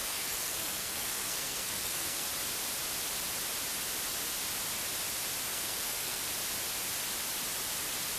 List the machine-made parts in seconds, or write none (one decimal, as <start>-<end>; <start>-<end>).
0.0-2.3; 5.5-6.2